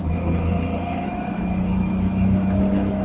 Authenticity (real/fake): fake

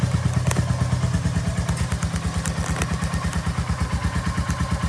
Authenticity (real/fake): real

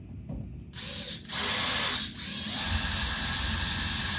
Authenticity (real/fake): real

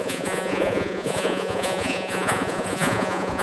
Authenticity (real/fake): fake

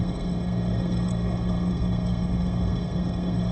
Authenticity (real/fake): fake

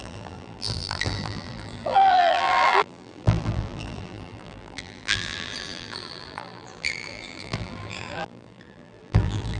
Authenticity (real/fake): fake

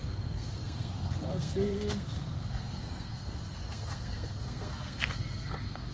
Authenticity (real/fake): fake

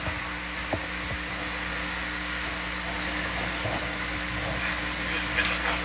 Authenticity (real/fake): real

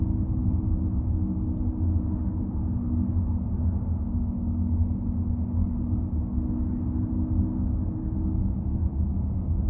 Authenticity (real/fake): real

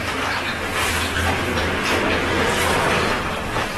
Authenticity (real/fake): real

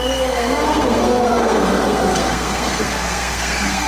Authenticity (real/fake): fake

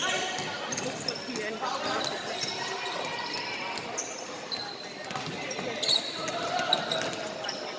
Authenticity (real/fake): real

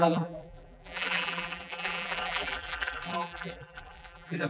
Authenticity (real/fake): fake